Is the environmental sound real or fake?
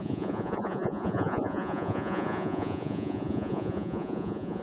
fake